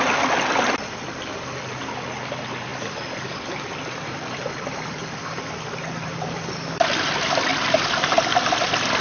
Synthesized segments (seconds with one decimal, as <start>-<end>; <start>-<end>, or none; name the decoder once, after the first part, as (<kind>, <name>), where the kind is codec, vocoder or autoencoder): none